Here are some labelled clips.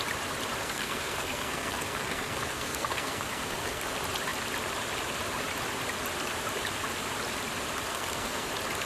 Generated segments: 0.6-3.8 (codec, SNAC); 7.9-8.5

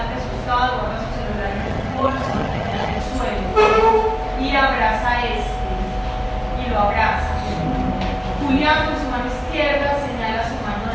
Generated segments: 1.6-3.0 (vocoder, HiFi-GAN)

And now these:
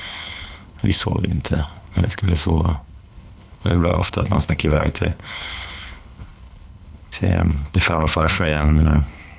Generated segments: 0.0-9.4 (codec, HILCodec)